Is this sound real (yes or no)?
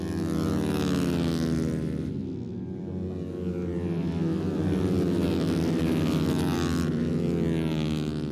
yes